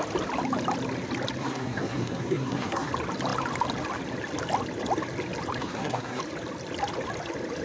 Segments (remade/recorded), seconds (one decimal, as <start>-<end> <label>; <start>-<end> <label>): 0.0-1.4 recorded; 1.4-2.9 remade; 2.9-5.6 recorded; 5.6-6.2 remade; 6.2-7.6 recorded